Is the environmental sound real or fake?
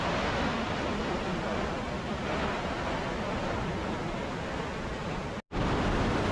real